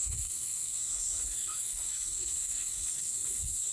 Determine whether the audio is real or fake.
fake